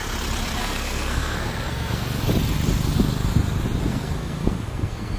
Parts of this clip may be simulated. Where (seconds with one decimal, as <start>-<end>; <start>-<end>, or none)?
0.6-2.2; 3.9-5.2